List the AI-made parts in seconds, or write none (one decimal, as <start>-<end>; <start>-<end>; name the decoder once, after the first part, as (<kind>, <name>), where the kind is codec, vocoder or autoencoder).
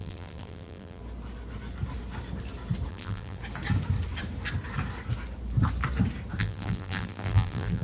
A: 0.0-1.0 (vocoder, BigVGAN v2); 2.9-3.4; 6.4-7.8